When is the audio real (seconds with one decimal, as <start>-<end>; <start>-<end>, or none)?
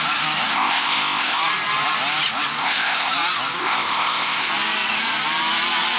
0.0-0.5; 1.4-2.6; 3.1-3.6; 4.5-6.0